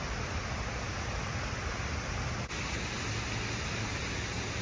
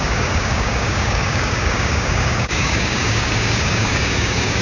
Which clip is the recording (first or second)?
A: first